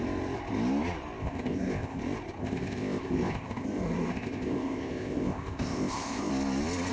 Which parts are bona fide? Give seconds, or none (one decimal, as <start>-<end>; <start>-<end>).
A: 0.0-1.2; 2.0-2.4; 6.3-6.9